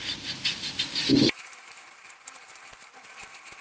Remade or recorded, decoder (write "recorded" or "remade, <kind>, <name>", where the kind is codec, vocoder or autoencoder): recorded